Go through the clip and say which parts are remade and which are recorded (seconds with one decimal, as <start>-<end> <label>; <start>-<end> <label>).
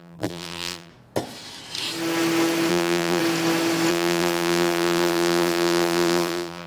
0.0-0.9 remade; 0.9-2.7 recorded; 2.7-3.2 remade; 3.2-3.9 recorded; 3.9-6.7 remade